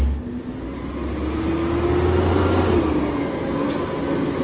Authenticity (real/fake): real